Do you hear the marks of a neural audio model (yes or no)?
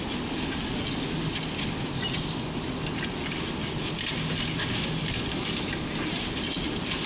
no